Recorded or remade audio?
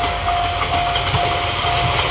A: recorded